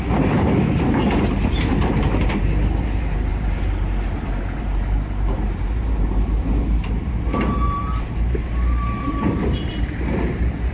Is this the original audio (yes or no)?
no